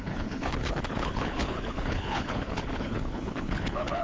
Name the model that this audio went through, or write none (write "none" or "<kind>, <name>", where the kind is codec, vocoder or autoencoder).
codec, HILCodec